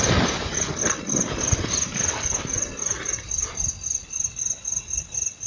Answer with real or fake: real